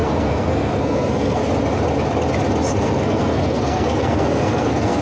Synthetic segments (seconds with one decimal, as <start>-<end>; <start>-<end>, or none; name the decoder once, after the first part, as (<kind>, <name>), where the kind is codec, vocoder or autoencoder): 0.0-1.4 (codec, SNAC); 2.7-5.0